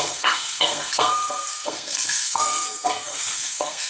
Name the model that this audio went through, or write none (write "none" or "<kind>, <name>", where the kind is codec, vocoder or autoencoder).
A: codec, SNAC